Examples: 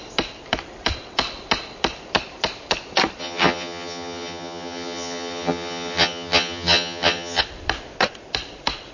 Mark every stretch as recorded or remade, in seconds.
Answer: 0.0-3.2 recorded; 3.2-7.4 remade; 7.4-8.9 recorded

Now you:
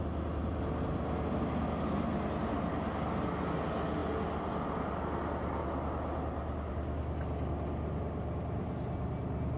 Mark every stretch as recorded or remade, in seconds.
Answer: 0.0-9.6 recorded

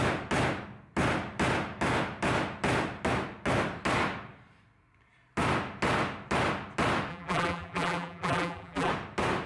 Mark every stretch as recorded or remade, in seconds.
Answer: 0.0-7.1 recorded; 7.1-8.9 remade; 8.9-9.5 recorded

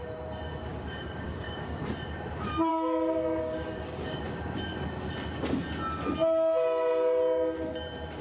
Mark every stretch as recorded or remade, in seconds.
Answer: 0.0-0.7 recorded; 0.7-1.8 remade; 1.8-2.7 recorded; 2.7-4.2 remade; 4.2-8.2 recorded

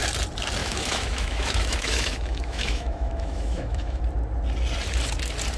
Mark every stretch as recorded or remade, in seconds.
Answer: 0.0-0.6 recorded; 0.6-4.0 remade; 4.0-5.6 recorded

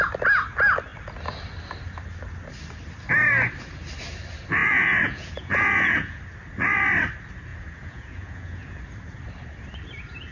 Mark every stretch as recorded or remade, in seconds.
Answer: 0.0-4.6 recorded; 4.6-6.2 remade; 6.2-7.5 recorded; 7.5-8.8 remade; 8.8-10.3 recorded

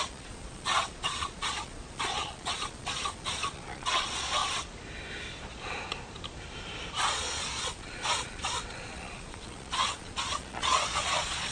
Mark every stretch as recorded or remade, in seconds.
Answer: 0.0-4.4 remade; 4.4-7.1 recorded; 7.1-11.5 remade

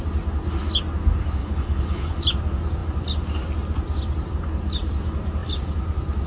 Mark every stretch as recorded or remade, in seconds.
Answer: 0.0-1.4 recorded; 1.4-2.2 remade; 2.2-6.3 recorded